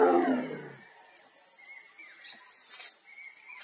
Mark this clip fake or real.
real